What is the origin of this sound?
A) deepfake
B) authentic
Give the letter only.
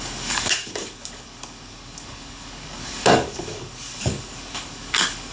A